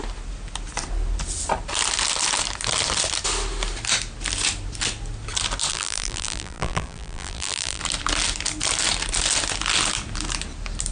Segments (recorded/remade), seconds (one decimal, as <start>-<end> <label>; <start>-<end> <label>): 0.0-5.7 recorded; 5.7-7.8 remade; 7.8-10.9 recorded